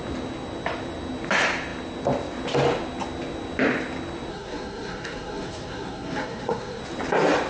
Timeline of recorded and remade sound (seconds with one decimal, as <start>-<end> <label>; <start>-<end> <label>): 0.0-4.3 recorded; 4.3-6.8 remade; 6.8-7.5 recorded